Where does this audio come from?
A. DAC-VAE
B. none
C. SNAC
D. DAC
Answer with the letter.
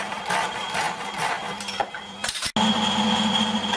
B